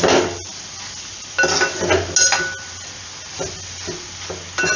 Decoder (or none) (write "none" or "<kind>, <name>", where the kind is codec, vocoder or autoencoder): none